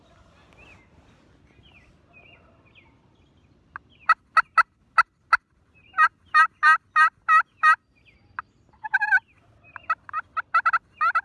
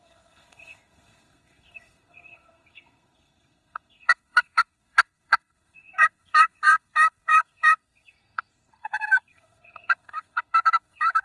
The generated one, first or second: second